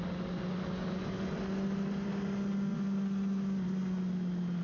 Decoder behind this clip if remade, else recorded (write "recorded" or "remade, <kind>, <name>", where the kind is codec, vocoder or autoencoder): recorded